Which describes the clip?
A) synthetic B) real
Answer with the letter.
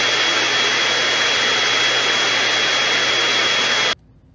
B